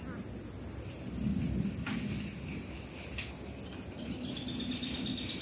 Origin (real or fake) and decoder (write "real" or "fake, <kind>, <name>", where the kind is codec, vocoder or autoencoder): real